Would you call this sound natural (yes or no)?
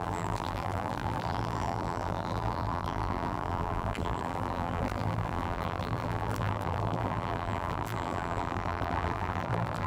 no